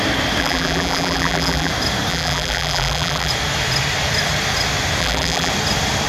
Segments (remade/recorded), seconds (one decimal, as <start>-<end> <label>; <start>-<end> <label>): 0.0-0.4 recorded; 0.4-1.7 remade; 1.7-2.1 recorded; 2.1-3.3 remade; 3.3-5.0 recorded; 5.0-5.5 remade; 5.5-6.1 recorded